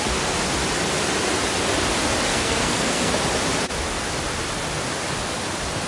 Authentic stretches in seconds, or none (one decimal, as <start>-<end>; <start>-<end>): 0.0-2.3; 3.1-5.9